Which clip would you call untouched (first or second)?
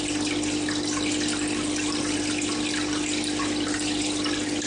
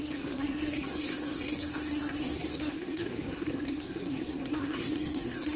first